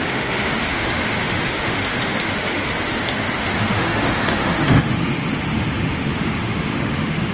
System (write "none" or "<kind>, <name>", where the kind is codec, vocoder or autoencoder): autoencoder, DAC-VAE